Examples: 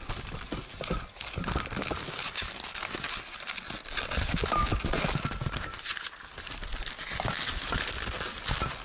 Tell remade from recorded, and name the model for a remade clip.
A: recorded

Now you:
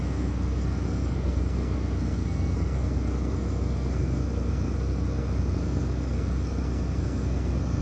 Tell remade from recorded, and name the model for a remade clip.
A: remade, codec, SNAC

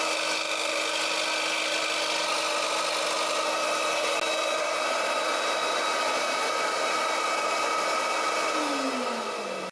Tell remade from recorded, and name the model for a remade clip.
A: recorded